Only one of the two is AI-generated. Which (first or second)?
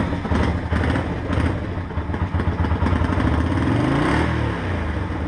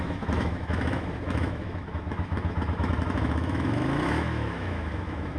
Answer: second